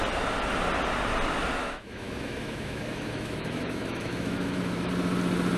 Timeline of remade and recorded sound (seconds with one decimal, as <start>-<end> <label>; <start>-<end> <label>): 0.0-1.6 recorded; 1.6-4.9 remade; 4.9-5.6 recorded